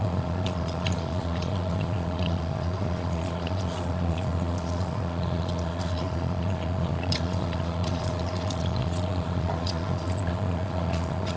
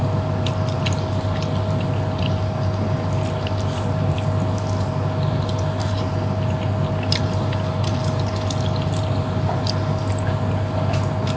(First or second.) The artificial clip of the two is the first